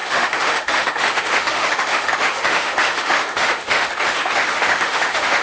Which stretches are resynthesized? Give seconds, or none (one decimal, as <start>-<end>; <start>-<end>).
0.0-5.4